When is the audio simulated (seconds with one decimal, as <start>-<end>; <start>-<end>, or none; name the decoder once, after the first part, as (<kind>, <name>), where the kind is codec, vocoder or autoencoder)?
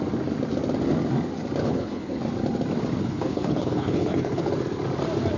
1.6-2.2 (codec, HILCodec); 3.0-4.5